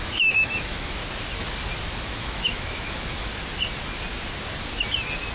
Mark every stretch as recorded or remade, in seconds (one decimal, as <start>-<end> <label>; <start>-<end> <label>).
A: 0.0-1.0 remade; 1.0-2.0 recorded; 2.0-3.3 remade; 3.3-5.3 recorded